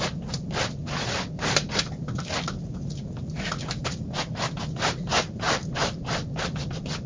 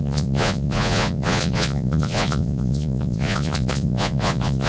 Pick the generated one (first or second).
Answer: second